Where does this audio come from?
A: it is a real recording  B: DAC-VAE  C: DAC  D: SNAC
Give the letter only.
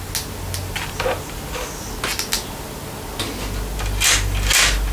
A